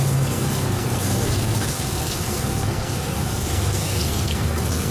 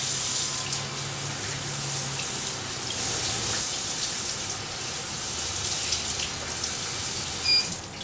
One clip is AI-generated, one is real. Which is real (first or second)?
second